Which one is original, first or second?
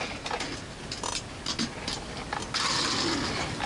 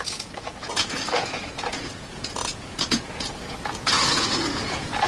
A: first